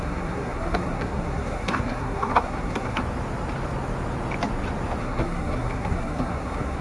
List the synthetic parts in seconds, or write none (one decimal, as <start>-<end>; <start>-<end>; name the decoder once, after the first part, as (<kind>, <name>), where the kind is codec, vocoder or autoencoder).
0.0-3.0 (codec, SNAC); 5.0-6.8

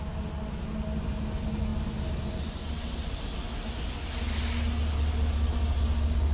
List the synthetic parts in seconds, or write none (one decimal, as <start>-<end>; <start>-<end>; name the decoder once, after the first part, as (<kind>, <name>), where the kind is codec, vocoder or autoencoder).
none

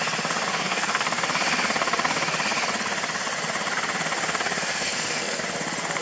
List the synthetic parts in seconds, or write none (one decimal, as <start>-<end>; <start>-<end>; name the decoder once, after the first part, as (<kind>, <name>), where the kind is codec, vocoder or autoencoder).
0.5-1.2 (codec, SNAC); 4.7-5.4

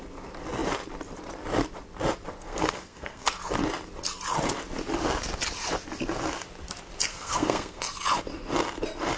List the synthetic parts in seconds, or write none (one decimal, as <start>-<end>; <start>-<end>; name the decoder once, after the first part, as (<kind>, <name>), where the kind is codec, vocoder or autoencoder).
2.4-3.3 (codec, SNAC); 7.1-7.8

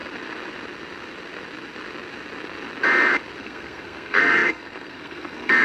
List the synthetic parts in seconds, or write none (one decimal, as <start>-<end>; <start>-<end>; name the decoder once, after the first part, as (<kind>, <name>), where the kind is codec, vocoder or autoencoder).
3.4-5.6 (codec, SNAC)